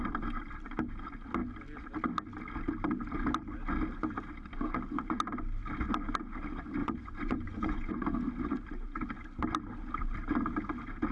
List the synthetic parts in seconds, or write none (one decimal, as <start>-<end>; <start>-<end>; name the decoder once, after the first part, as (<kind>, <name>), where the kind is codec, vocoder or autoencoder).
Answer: 6.8-7.9 (vocoder, Vocos)